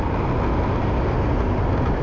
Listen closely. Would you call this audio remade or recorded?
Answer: recorded